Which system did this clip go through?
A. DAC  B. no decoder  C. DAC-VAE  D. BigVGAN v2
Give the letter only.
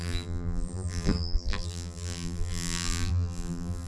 D